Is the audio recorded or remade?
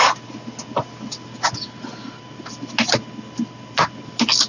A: recorded